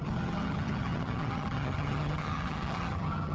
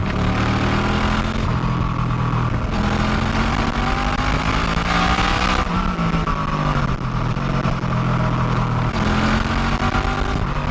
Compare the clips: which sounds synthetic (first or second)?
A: first